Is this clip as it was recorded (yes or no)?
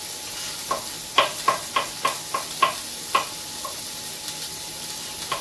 yes